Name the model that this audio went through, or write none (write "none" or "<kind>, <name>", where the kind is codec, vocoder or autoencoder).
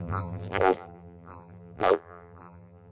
vocoder, BigVGAN v2